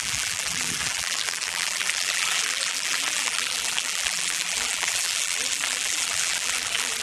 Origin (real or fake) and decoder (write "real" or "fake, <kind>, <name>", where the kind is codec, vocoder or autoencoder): fake, vocoder, BigVGAN v2